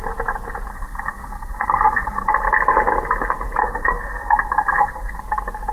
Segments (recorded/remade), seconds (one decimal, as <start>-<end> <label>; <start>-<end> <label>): 0.0-0.7 recorded; 0.7-2.3 remade; 2.3-3.6 recorded; 3.6-5.2 remade; 5.2-5.7 recorded